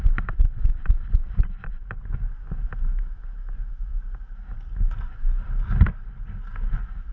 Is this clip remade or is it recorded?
recorded